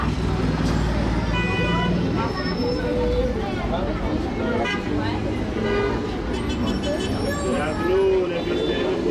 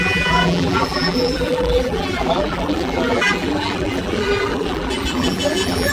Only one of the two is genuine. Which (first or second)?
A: first